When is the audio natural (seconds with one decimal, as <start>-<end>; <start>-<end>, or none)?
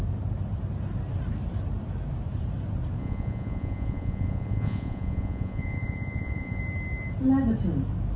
0.0-3.0; 6.6-8.2